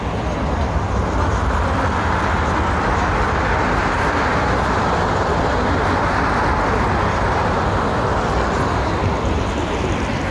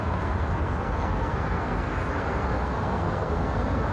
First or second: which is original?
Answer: first